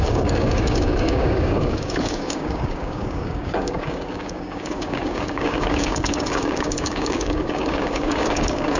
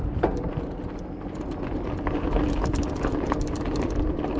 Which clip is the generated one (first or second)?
first